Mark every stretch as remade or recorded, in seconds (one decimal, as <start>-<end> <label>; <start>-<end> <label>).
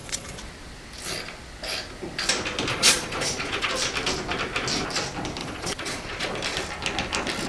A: 0.0-0.5 remade; 0.5-2.7 recorded; 2.7-3.7 remade; 3.7-5.4 recorded; 5.4-6.3 remade; 6.3-7.5 recorded